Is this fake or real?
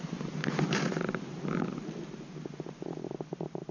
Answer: real